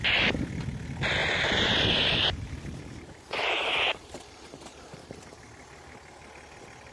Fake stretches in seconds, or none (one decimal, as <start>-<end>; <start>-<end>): 1.2-5.3